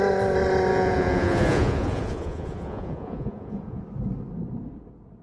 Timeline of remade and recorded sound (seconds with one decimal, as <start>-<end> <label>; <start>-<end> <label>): 0.0-0.7 recorded; 0.7-3.8 remade; 3.8-5.2 recorded